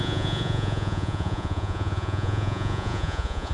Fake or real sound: fake